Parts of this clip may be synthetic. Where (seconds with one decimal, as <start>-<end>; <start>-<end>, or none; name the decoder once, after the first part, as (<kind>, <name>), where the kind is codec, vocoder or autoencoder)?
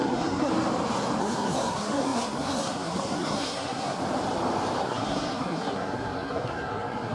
0.0-0.5 (codec, SNAC); 1.2-4.0; 4.8-7.1